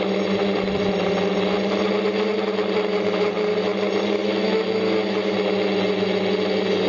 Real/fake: real